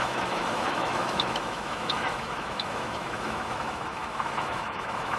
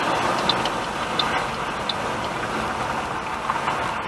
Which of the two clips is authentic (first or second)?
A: second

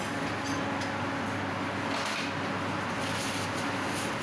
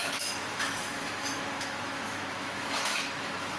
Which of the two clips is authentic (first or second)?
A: first